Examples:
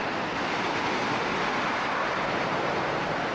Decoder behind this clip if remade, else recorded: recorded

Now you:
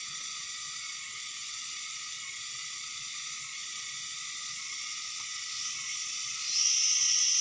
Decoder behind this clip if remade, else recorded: remade, vocoder, Vocos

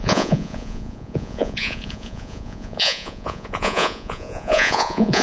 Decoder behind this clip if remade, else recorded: remade, vocoder, Vocos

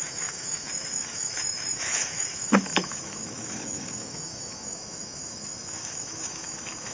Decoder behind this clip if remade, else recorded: remade, autoencoder, DAC-VAE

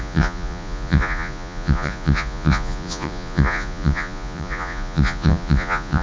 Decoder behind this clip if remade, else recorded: remade, vocoder, Vocos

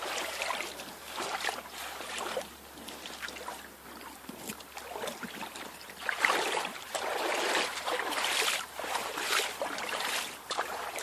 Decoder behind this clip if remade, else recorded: remade, vocoder, BigVGAN v2